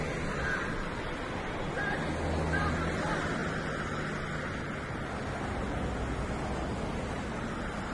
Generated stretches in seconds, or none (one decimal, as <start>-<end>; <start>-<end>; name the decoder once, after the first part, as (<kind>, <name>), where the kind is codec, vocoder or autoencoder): none